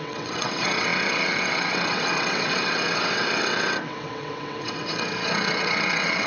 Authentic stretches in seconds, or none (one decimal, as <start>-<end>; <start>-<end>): none